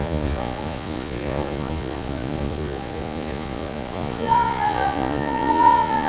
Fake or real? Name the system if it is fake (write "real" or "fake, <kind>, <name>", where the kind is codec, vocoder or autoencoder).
fake, vocoder, Vocos